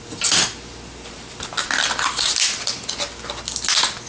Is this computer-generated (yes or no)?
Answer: no